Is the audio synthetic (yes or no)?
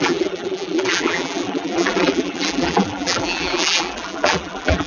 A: yes